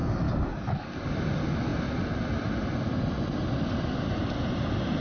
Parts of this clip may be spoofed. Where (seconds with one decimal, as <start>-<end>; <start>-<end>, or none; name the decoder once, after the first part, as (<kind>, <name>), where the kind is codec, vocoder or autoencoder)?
none